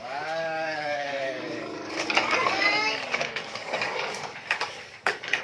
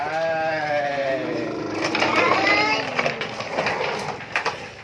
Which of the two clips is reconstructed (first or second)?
first